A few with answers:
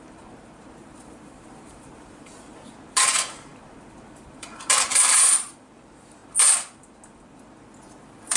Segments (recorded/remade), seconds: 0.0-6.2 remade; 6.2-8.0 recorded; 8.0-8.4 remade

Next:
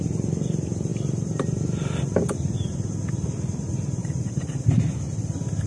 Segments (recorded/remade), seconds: 0.0-4.0 recorded; 4.0-4.6 remade; 4.6-5.7 recorded

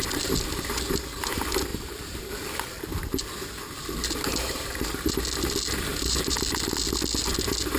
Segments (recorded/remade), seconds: 0.0-1.7 recorded; 1.7-2.2 remade; 2.2-4.0 recorded; 4.0-4.9 remade; 4.9-5.9 recorded; 5.9-6.4 remade; 6.4-7.8 recorded

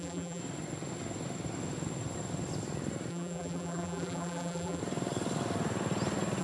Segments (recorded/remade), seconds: 0.0-0.4 remade; 0.4-3.1 recorded; 3.1-4.8 remade; 4.8-6.4 recorded

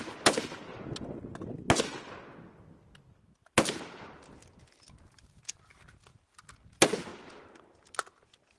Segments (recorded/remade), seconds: 0.0-7.1 recorded; 7.1-7.7 remade; 7.7-8.6 recorded